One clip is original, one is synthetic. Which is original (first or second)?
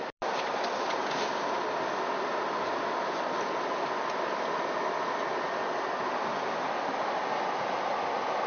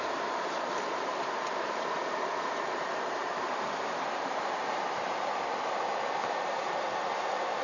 first